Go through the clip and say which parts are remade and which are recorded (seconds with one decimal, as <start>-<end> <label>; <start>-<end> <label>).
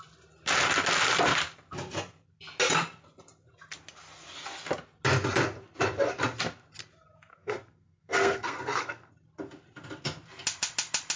0.0-7.3 recorded; 7.3-9.1 remade; 9.1-11.2 recorded